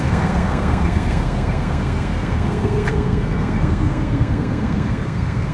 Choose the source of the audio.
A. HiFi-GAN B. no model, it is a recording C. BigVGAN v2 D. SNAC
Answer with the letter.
D